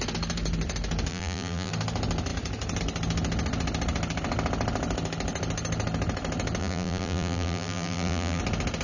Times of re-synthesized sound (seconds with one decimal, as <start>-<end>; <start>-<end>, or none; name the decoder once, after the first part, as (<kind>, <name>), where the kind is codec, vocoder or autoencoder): 1.1-1.7 (vocoder, BigVGAN v2); 6.6-8.4